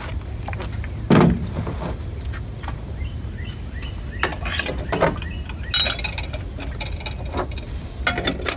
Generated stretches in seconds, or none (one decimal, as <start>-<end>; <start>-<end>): none